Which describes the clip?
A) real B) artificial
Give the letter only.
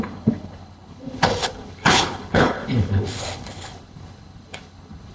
B